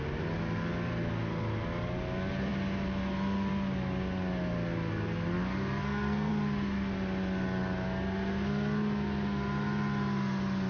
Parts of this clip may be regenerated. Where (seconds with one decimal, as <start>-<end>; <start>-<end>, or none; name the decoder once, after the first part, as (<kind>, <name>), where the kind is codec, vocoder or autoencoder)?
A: 5.8-6.3 (codec, SNAC)